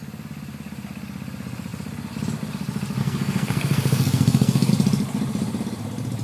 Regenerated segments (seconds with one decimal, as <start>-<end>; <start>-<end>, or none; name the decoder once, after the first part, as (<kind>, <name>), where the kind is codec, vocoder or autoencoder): 3.0-4.7 (codec, SNAC)